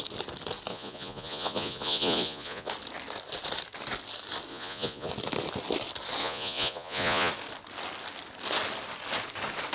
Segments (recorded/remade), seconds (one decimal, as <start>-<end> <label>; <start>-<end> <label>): 0.0-0.7 recorded; 0.7-2.7 remade; 2.7-4.5 recorded; 4.5-5.1 remade; 5.1-6.2 recorded; 6.2-7.3 remade; 7.3-9.7 recorded